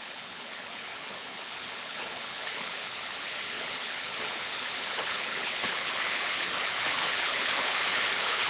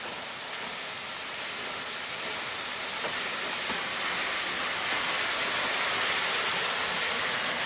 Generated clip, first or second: first